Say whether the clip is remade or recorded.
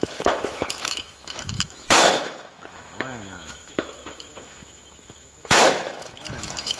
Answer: remade